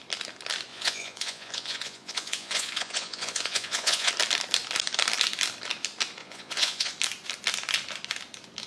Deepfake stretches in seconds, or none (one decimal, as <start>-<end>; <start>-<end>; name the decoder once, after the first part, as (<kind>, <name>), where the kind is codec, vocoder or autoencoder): 0.7-4.1 (vocoder, Vocos); 6.2-6.9